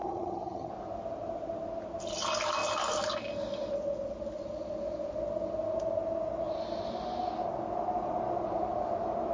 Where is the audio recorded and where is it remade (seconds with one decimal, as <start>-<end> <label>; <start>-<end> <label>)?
0.0-0.7 remade; 0.7-9.3 recorded